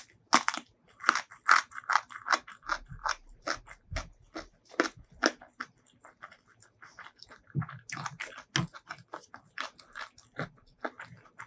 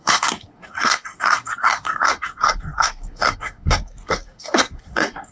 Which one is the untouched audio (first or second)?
first